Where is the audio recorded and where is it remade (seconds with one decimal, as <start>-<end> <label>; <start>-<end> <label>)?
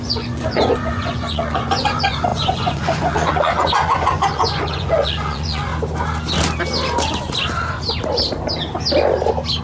0.0-5.7 remade; 5.7-9.6 recorded